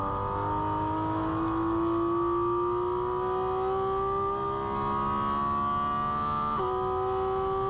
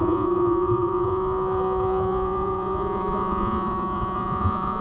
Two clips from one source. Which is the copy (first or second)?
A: second